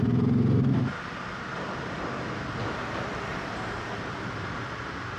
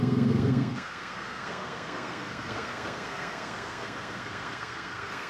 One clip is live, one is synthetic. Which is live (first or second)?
first